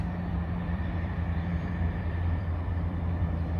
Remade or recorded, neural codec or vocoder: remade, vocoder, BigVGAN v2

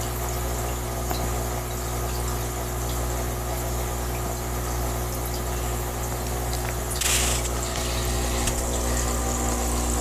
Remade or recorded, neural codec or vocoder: recorded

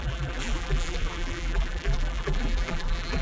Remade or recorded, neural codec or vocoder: remade, vocoder, BigVGAN v2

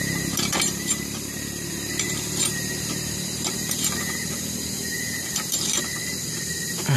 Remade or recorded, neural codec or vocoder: remade, vocoder, BigVGAN v2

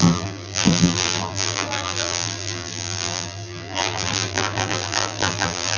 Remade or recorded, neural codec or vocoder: remade, vocoder, BigVGAN v2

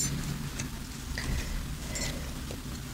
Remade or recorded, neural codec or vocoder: recorded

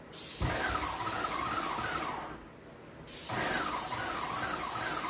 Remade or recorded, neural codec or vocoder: recorded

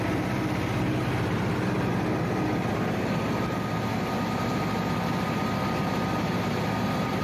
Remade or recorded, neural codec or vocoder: recorded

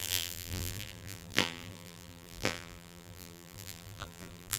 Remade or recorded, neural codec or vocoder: remade, vocoder, BigVGAN v2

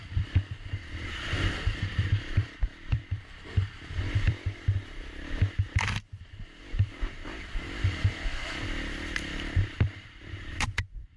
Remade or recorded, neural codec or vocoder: remade, vocoder, BigVGAN v2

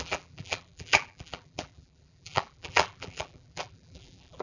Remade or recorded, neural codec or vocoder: remade, vocoder, BigVGAN v2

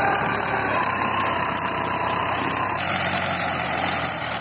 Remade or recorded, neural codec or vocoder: remade, vocoder, BigVGAN v2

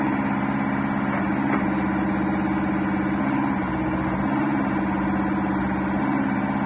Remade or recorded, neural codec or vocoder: recorded